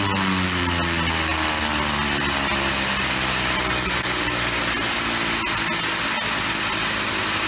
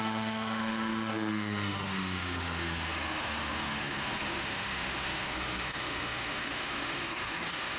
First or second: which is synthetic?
second